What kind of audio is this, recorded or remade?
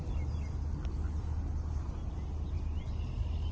recorded